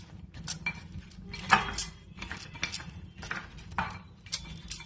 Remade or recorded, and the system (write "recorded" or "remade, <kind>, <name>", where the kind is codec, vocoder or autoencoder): recorded